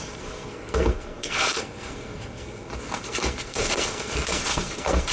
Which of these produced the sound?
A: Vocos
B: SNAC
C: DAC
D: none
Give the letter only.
B